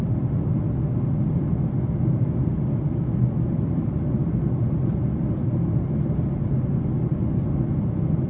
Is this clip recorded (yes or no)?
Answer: yes